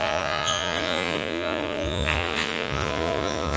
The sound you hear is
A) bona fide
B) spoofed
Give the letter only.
B